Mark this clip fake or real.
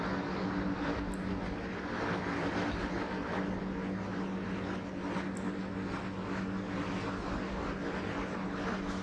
real